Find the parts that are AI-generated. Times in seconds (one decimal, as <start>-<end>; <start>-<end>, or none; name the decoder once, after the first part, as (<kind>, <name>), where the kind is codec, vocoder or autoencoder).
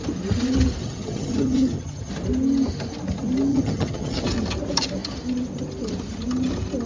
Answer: 0.8-2.1 (vocoder, HiFi-GAN); 3.5-4.2